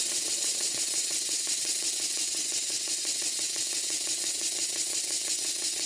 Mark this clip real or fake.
fake